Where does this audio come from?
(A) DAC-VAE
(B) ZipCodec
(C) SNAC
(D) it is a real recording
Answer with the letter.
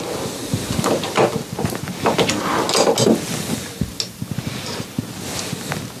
D